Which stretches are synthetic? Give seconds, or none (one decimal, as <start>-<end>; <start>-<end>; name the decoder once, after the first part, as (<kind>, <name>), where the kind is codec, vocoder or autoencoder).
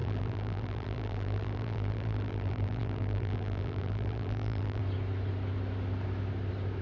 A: 0.0-4.8 (vocoder, BigVGAN v2)